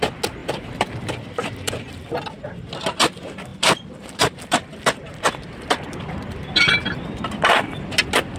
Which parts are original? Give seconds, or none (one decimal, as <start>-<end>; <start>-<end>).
0.0-0.4; 2.4-3.5; 6.0-8.4